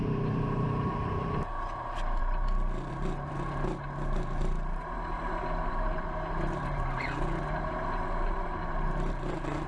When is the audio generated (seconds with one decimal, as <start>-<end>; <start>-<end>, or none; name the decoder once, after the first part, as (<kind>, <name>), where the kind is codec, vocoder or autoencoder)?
0.0-2.2 (vocoder, BigVGAN v2); 2.9-9.7